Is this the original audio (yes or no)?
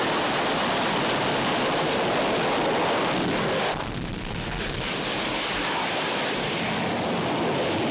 yes